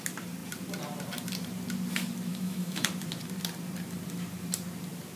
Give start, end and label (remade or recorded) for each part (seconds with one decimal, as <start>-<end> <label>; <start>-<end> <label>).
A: 0.0-2.3 recorded; 2.3-2.9 remade; 2.9-5.2 recorded